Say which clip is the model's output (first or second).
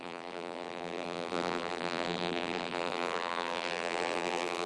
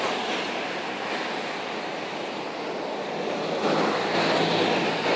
first